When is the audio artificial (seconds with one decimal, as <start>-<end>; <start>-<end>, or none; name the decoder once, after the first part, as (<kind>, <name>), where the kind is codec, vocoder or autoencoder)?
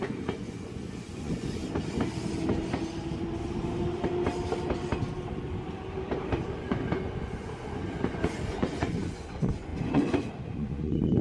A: 0.0-1.6 (vocoder, Vocos); 6.5-11.2